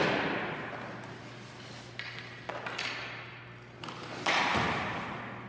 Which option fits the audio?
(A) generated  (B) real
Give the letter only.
B